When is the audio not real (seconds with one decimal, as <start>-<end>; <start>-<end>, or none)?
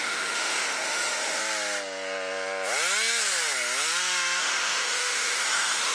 0.0-1.4; 4.4-5.9